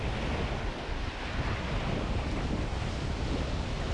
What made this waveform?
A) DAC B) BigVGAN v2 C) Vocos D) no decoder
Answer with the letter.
D